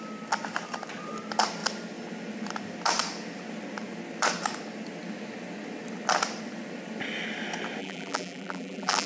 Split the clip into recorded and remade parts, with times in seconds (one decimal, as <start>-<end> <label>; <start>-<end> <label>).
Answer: 0.0-7.8 recorded; 7.8-9.1 remade